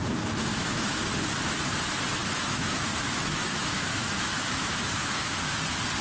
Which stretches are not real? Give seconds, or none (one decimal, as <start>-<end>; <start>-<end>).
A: 0.5-1.1; 2.2-5.6